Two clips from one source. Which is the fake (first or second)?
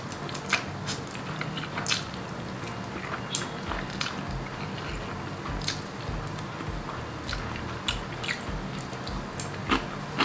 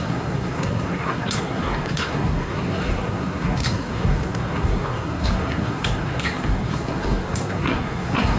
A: second